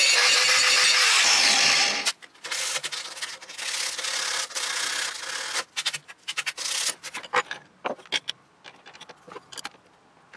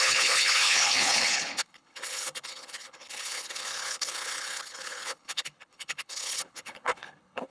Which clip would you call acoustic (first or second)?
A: first